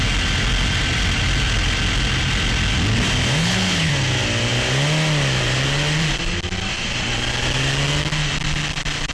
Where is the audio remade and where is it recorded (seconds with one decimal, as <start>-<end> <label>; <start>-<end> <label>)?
0.0-3.4 recorded; 3.4-3.9 remade; 3.9-9.1 recorded